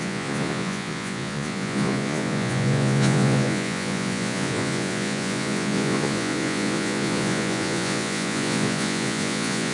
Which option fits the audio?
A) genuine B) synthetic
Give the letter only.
B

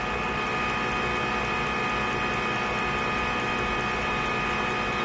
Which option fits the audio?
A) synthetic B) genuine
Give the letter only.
B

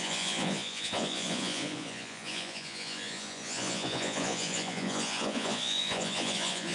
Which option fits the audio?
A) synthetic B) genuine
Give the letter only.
A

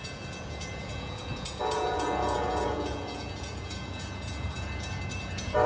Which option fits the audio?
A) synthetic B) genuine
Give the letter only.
A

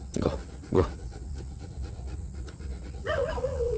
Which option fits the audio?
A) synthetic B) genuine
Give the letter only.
A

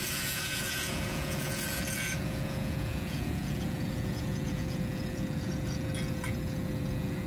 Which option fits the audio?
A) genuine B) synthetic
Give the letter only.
B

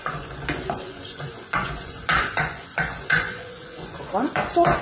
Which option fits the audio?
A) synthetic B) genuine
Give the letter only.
A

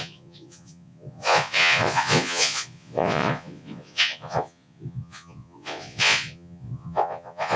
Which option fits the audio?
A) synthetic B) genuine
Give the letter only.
A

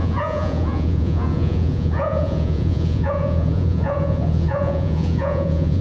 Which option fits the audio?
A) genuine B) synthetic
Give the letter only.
B